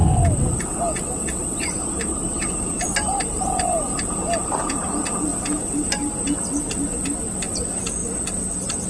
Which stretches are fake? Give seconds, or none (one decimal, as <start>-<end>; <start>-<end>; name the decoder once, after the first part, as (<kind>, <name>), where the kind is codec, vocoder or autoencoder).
2.1-4.2 (vocoder, BigVGAN v2)